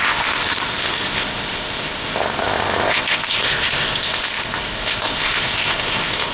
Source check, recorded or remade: remade